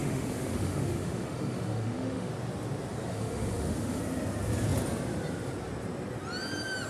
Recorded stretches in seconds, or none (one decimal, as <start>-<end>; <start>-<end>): 2.3-3.1; 4.0-6.9